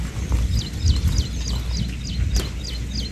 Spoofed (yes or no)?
no